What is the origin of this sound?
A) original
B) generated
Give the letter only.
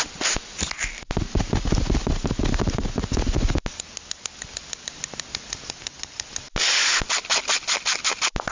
A